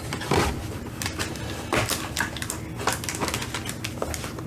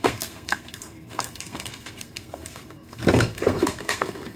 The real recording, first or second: first